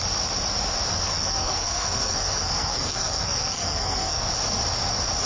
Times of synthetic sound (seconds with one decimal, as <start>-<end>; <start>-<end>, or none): 1.1-4.3